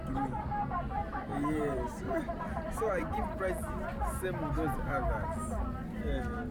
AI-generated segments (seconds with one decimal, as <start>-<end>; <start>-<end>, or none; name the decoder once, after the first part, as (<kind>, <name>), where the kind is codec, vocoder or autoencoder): 1.3-3.4 (vocoder, BigVGAN v2)